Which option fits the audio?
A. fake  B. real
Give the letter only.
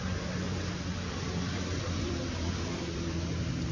B